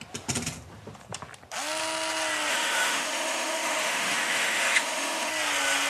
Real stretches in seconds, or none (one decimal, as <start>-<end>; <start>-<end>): 0.0-2.5; 5.3-5.9